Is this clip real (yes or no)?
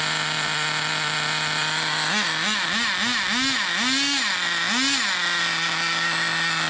yes